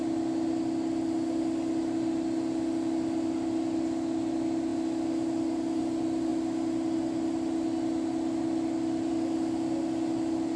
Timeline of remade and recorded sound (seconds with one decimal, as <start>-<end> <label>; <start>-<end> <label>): 0.0-10.6 recorded